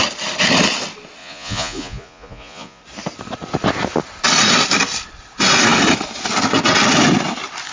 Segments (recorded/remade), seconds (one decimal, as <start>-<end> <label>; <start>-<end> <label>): 0.0-1.2 recorded; 1.2-2.8 remade; 2.8-7.7 recorded